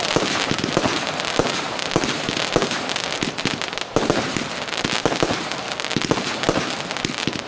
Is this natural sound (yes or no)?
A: yes